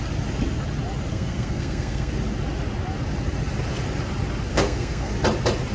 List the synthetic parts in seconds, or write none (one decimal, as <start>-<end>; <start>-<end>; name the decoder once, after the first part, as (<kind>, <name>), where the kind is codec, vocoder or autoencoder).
1.1-2.1 (codec, SNAC); 4.5-5.1